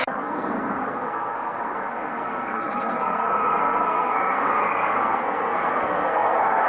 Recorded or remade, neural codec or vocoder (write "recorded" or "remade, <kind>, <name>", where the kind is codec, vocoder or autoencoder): remade, codec, SNAC